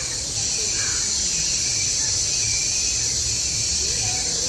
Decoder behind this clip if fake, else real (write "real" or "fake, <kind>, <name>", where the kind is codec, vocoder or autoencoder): real